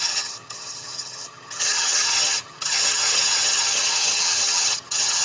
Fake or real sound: fake